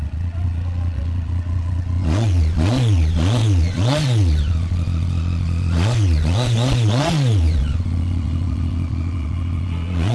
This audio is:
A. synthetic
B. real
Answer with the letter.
A